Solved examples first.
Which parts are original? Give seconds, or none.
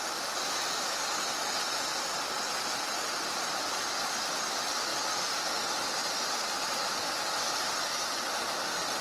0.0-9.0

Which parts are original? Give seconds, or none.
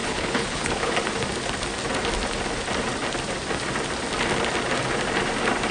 0.9-5.7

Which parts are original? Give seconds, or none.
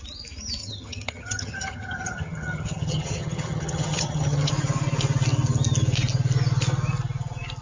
0.0-0.6; 4.5-7.6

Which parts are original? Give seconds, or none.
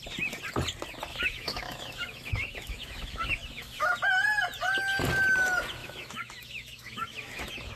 0.0-1.1; 3.9-5.8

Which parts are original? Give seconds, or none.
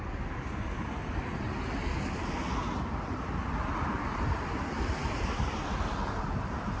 0.0-5.0; 6.2-6.8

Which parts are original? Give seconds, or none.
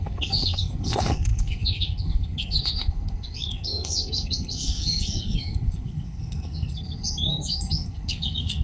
none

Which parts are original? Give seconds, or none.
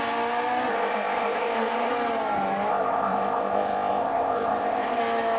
0.0-0.7; 1.9-2.7; 5.0-5.4